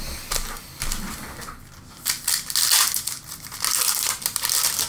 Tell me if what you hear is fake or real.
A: real